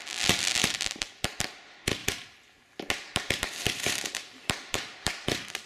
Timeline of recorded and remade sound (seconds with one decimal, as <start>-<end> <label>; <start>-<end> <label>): 0.0-0.6 recorded; 0.6-1.4 remade; 1.4-2.0 recorded; 2.0-5.7 remade